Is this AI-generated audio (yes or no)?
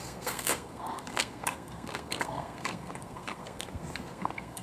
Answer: yes